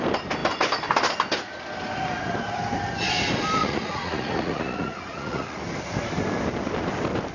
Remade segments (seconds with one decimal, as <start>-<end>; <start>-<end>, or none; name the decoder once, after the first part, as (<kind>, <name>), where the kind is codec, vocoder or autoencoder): 3.6-5.6 (vocoder, Vocos)